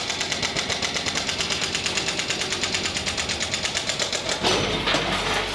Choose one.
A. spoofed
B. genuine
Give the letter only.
B